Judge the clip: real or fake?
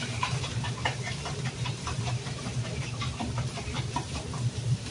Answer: fake